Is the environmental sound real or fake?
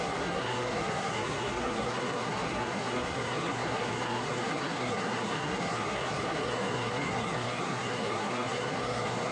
fake